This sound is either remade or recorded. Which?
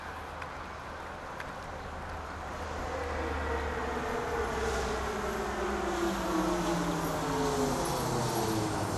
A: recorded